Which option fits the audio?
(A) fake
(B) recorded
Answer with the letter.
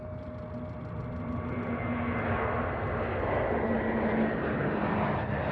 B